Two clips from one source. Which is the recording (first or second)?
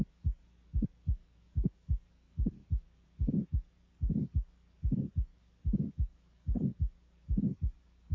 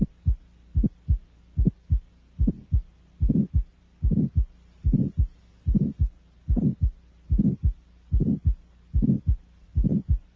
second